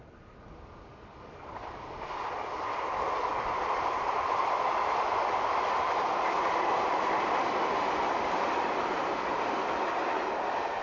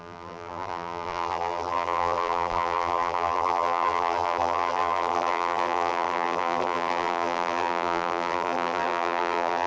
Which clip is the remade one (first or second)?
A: second